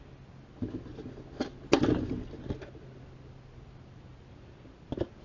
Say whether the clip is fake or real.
real